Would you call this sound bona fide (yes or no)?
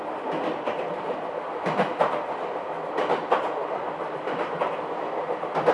yes